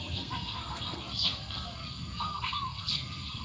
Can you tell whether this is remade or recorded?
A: remade